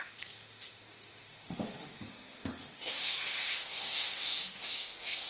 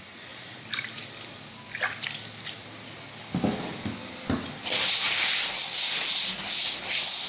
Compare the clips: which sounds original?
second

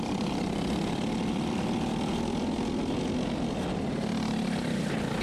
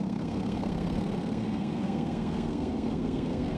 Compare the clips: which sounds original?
first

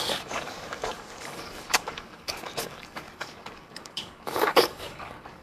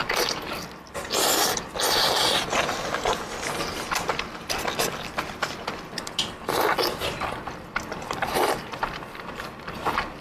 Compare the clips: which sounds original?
second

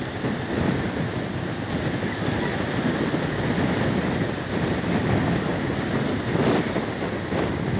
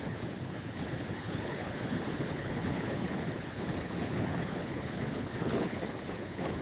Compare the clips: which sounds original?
first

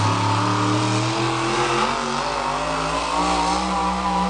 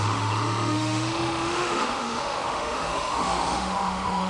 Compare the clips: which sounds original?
first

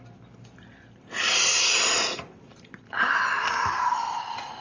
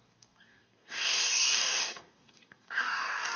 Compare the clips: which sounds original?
first